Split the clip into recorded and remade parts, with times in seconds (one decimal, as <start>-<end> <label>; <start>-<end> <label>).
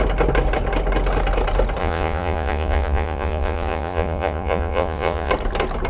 0.0-1.8 recorded; 1.8-5.3 remade; 5.3-5.9 recorded